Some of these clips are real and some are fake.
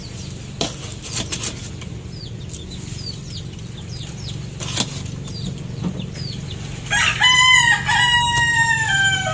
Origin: real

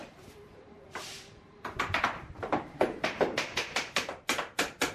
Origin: fake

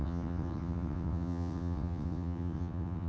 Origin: fake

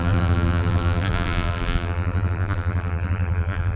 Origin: fake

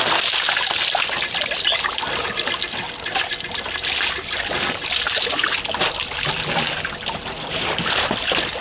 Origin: real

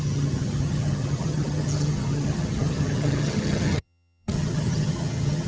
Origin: fake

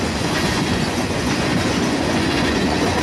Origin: fake